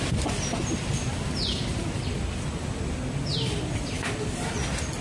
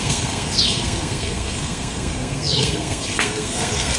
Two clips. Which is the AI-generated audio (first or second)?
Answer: second